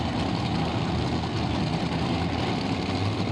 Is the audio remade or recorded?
recorded